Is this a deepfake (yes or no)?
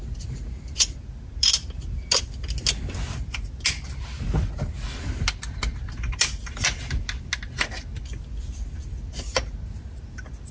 no